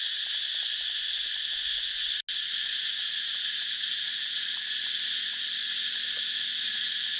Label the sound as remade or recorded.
recorded